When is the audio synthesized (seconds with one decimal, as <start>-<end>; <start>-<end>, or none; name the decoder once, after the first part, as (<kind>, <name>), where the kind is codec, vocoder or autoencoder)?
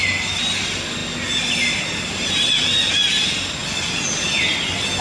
none